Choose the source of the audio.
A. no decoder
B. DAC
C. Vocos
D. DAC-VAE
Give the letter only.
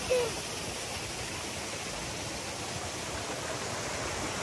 A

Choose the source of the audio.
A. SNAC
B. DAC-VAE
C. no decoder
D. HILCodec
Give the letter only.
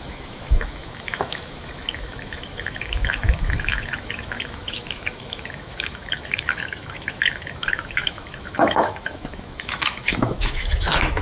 B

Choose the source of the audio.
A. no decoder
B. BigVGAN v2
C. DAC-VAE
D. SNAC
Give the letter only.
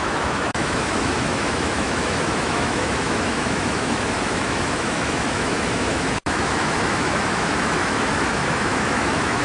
C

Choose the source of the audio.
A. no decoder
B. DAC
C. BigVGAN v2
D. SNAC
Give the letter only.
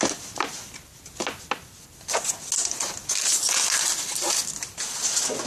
A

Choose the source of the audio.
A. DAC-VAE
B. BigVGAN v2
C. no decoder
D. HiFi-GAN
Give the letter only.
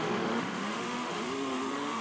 A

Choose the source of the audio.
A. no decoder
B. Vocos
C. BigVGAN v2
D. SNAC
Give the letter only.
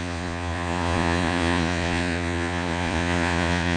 B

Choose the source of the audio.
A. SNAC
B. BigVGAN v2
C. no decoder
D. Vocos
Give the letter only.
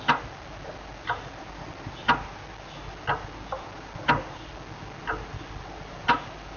C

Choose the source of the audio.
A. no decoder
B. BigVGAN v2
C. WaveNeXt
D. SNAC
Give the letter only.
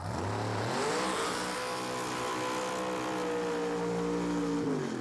A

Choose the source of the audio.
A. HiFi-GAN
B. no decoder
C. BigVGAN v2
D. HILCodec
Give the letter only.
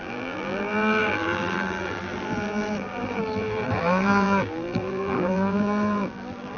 C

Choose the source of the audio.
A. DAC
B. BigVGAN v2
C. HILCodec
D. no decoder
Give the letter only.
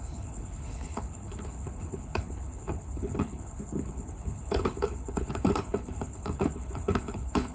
C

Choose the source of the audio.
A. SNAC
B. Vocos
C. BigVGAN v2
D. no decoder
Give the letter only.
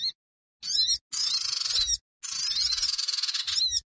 D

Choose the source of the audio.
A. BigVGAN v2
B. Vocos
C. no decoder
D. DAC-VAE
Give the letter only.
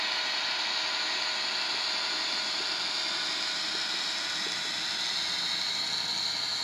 C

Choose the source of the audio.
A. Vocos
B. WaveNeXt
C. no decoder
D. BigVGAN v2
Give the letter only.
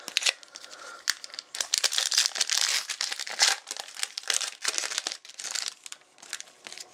C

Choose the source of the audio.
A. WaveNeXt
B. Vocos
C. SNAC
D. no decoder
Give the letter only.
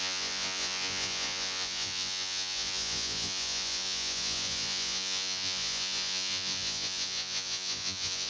B